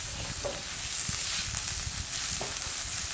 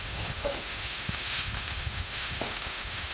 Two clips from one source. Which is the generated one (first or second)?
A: second